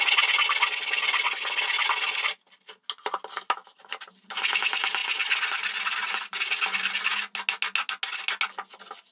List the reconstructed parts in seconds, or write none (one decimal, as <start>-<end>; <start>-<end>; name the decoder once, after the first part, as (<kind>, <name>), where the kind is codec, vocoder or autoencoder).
3.6-4.6 (vocoder, BigVGAN v2)